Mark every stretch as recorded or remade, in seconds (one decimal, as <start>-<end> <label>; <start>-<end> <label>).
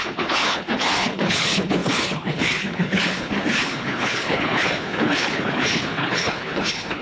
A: 0.0-7.0 remade